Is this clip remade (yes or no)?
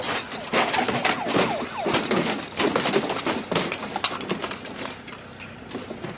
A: no